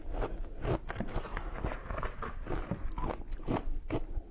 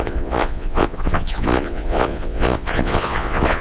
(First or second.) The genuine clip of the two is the first